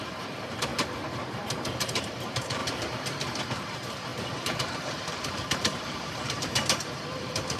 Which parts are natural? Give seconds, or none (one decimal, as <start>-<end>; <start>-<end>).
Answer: 0.7-1.8